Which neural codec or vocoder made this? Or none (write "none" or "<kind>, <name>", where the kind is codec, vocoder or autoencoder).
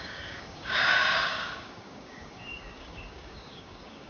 codec, DAC